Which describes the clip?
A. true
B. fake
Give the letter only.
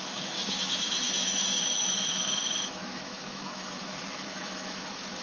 B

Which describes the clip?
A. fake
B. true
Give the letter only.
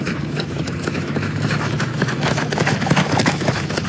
A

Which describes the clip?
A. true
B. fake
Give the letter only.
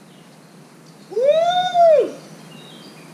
A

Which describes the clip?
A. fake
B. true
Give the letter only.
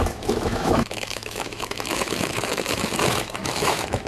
A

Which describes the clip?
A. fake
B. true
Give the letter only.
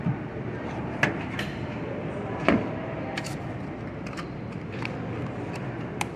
B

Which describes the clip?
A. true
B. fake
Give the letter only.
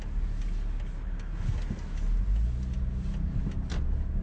A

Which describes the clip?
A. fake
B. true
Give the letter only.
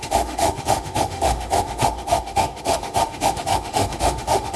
A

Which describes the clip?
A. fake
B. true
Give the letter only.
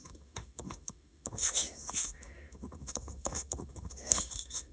A